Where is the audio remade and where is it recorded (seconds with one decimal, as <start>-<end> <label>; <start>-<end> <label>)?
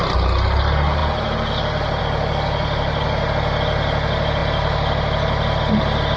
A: 0.0-6.2 recorded